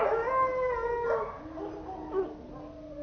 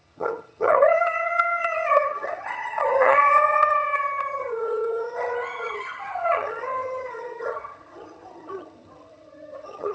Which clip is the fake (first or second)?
second